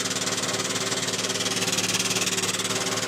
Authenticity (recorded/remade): recorded